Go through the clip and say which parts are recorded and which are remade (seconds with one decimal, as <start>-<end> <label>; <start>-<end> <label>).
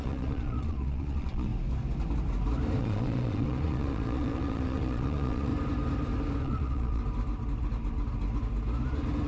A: 0.0-1.5 remade; 1.5-2.8 recorded; 2.8-5.5 remade; 5.5-6.4 recorded; 6.4-7.0 remade; 7.0-9.3 recorded